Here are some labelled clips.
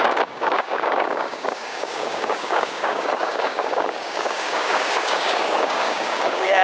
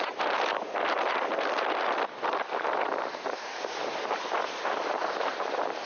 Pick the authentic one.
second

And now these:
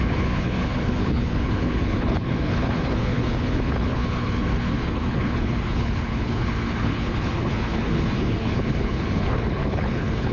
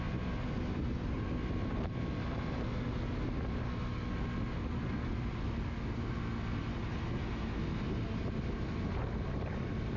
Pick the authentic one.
second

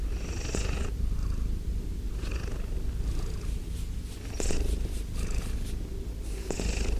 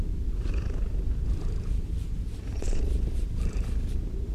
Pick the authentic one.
first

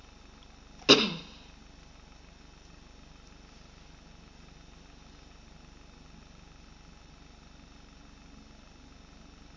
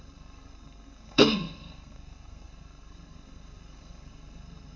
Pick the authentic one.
first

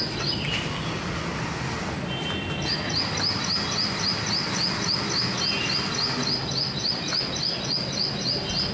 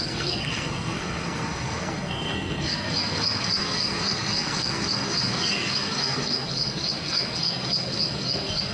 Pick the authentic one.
first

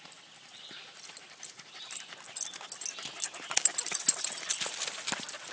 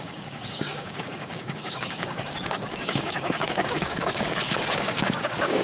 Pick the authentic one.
first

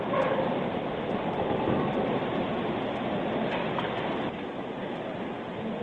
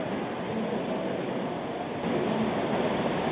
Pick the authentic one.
second